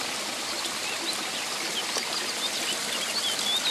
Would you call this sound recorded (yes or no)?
yes